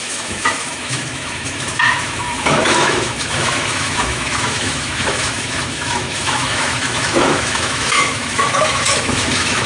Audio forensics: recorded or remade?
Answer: remade